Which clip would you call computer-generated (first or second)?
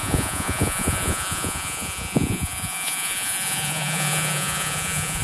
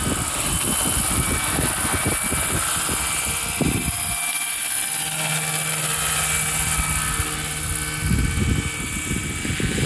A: first